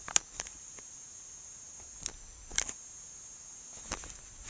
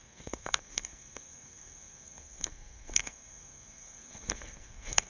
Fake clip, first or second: second